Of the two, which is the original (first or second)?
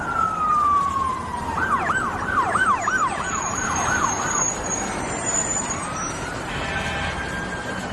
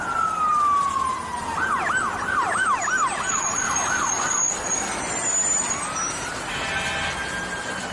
second